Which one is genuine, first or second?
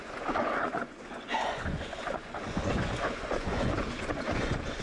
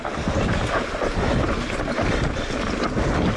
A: second